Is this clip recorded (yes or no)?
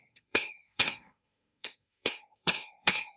no